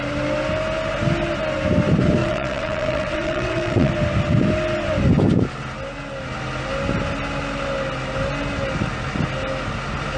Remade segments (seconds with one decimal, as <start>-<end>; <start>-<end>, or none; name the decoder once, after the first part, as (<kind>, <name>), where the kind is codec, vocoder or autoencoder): 2.2-3.9 (vocoder, WaveNeXt)